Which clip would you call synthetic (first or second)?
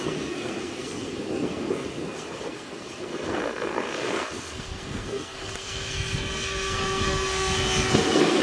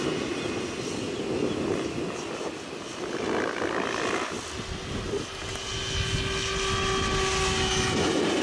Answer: first